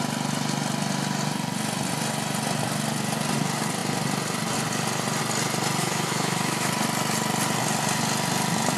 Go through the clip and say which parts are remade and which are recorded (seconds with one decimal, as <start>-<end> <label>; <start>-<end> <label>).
0.0-5.8 recorded; 5.8-6.7 remade; 6.7-8.8 recorded